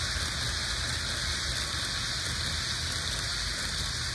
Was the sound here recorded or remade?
recorded